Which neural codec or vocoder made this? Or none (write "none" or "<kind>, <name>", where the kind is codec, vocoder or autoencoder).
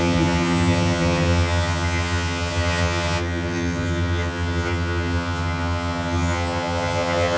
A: vocoder, HiFi-GAN